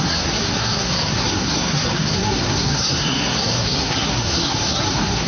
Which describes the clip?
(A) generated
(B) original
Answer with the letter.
A